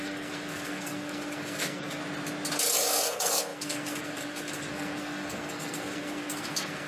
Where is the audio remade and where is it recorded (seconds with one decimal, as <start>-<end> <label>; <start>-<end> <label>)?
0.0-2.0 remade; 2.0-2.9 recorded; 2.9-6.9 remade